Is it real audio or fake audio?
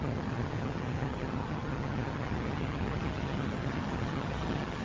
fake